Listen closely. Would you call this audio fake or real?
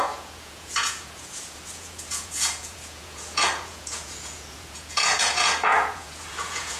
fake